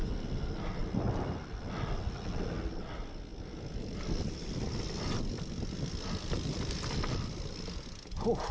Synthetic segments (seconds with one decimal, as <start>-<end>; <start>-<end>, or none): none